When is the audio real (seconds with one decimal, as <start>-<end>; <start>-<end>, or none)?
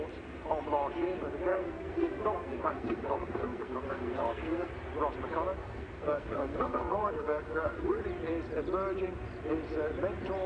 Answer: 0.0-1.5; 4.7-5.6; 8.0-10.5